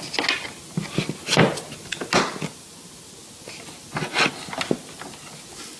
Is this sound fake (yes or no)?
no